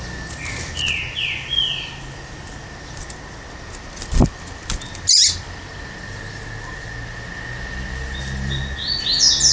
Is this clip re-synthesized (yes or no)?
no